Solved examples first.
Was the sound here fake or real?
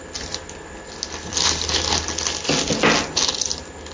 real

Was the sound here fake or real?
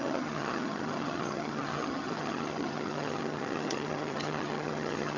fake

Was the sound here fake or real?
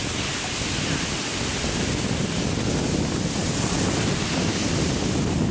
real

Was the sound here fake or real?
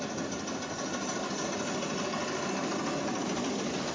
real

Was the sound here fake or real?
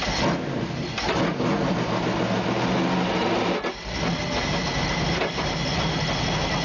real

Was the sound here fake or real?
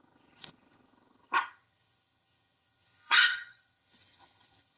fake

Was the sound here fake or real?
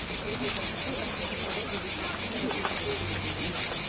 real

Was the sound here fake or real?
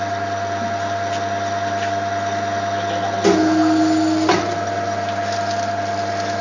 real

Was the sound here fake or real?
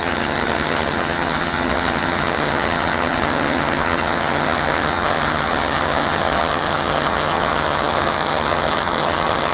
fake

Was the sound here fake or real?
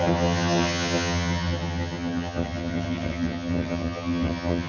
fake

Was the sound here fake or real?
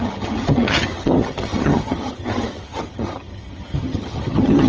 fake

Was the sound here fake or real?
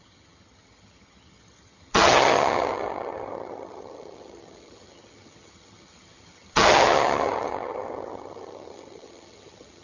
fake